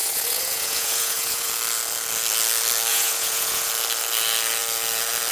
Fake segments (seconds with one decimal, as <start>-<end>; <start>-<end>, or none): 0.0-1.5; 2.9-3.7